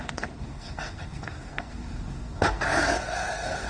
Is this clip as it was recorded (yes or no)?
no